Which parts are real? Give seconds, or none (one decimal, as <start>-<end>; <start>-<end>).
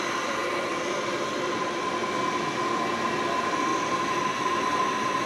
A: 0.0-0.4; 1.8-5.3